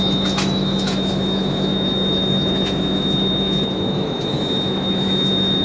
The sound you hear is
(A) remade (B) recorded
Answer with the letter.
A